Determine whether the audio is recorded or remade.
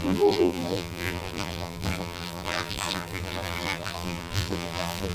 remade